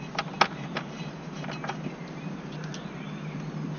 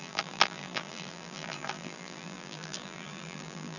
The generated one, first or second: second